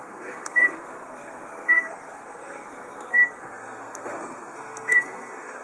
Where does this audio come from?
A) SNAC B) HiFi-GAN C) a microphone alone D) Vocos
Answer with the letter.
A